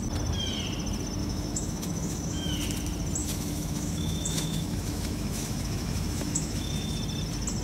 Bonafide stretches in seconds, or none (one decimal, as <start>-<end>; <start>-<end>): 0.0-1.2; 2.5-3.2; 7.0-7.6